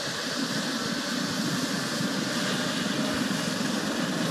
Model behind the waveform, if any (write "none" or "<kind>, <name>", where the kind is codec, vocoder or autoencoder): none